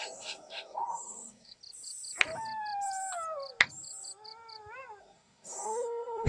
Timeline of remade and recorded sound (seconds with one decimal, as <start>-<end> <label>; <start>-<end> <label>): 0.0-1.6 remade; 1.6-5.0 recorded; 5.0-6.3 remade